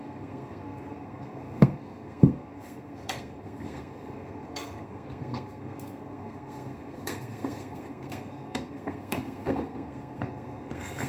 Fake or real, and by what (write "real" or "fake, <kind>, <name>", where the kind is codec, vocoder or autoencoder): fake, codec, SNAC